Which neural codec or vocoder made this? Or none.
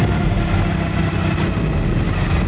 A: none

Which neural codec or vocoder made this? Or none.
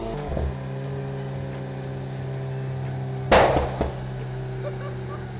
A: none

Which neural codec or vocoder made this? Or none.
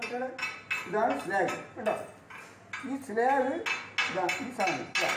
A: none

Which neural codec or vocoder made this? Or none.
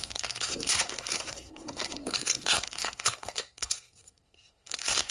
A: codec, SNAC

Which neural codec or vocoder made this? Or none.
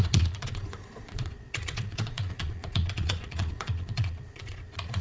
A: vocoder, Vocos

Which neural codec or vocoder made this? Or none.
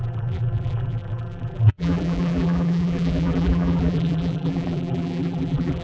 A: vocoder, BigVGAN v2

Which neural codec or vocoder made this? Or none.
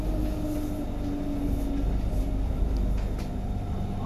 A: none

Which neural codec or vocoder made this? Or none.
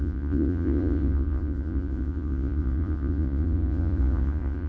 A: vocoder, Vocos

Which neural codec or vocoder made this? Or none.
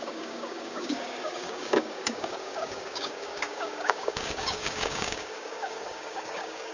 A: codec, DAC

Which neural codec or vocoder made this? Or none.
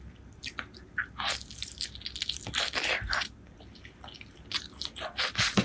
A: none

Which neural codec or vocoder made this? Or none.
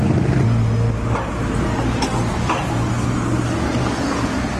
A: none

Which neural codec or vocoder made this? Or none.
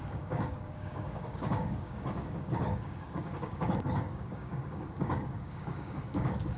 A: codec, DAC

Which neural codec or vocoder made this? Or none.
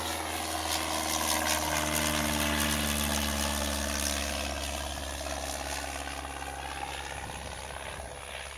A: none